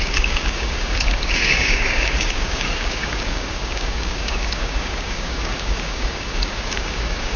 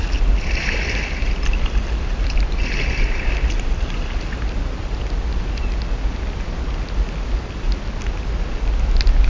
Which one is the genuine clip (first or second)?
second